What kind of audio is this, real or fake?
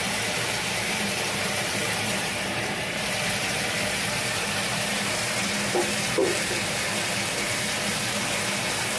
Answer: fake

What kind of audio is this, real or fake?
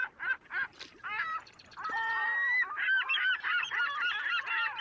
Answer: fake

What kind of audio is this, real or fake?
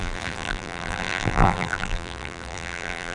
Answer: fake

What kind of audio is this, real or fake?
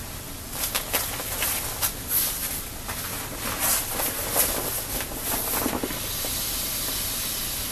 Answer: real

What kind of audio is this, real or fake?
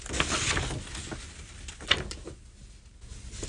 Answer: real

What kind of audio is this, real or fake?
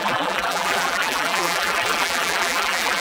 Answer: fake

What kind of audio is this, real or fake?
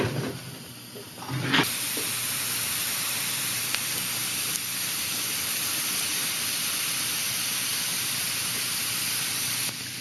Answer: fake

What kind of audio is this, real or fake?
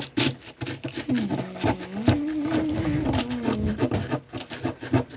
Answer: fake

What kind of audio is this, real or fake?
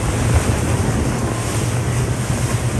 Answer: real